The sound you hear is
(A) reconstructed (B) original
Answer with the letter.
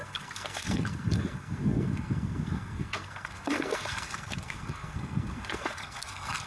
A